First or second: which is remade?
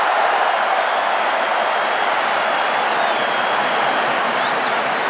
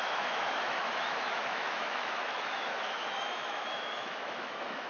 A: second